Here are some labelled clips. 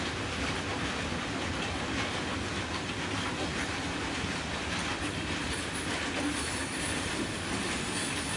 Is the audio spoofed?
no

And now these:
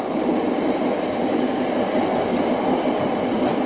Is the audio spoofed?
yes